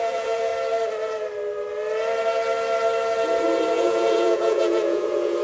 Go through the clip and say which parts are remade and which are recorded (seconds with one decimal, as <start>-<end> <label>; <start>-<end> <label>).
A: 0.0-0.5 remade; 0.5-3.7 recorded; 3.7-5.4 remade